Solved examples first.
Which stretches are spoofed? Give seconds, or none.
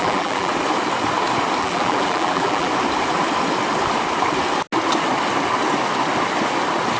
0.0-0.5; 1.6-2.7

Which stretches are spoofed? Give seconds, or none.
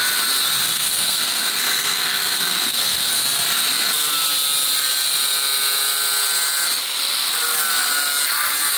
0.7-3.1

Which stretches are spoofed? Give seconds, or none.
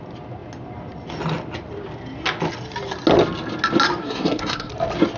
4.0-4.7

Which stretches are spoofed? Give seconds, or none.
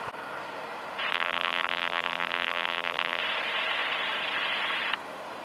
1.1-3.2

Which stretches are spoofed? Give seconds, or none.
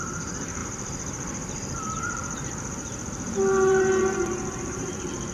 0.0-5.3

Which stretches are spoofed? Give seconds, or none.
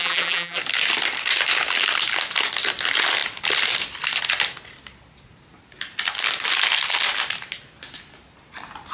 0.0-0.6